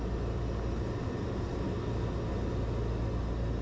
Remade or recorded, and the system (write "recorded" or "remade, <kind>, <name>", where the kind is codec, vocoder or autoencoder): recorded